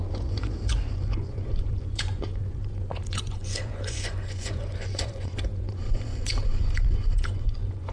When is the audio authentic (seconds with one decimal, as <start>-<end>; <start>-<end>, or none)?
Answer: none